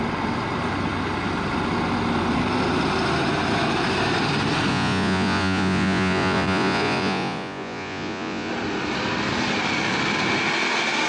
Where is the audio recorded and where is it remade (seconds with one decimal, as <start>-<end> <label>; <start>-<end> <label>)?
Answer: 0.0-4.7 recorded; 4.7-8.5 remade; 8.5-11.1 recorded